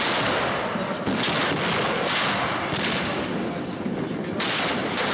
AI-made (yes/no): no